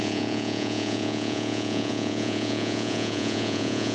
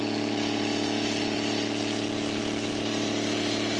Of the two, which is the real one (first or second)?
second